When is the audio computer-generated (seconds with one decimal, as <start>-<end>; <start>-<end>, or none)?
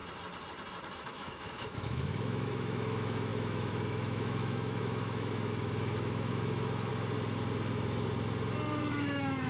1.0-6.9; 8.8-9.5